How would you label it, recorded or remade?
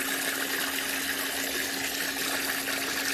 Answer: recorded